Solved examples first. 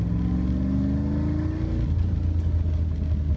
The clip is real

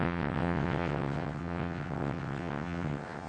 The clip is fake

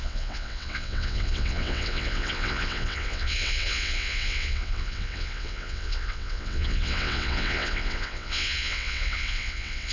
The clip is fake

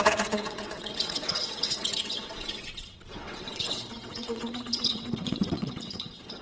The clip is fake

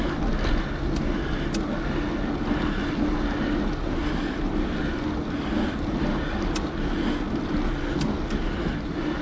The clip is real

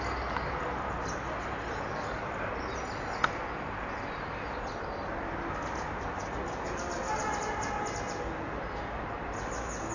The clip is real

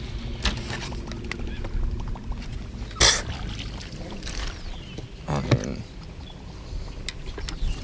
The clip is real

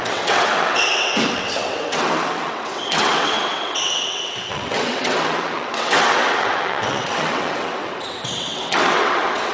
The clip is fake